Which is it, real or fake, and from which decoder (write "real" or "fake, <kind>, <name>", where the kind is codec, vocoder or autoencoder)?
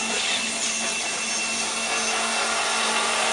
real